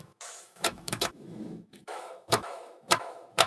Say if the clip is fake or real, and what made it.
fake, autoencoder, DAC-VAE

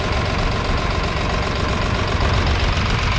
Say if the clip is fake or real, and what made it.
real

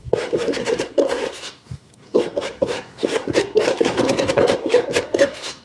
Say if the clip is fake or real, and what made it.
fake, codec, SNAC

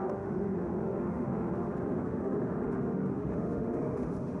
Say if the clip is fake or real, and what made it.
fake, autoencoder, DAC-VAE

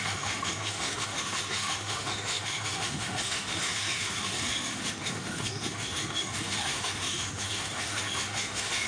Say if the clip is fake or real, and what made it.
fake, autoencoder, DAC-VAE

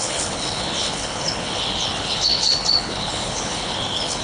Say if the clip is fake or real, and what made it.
fake, codec, HILCodec